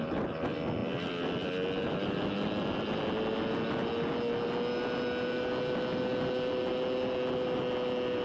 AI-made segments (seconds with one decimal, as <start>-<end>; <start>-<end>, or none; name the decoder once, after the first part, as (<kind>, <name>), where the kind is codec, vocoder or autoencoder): none